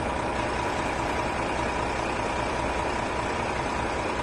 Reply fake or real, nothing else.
fake